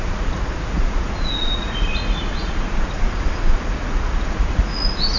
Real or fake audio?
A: fake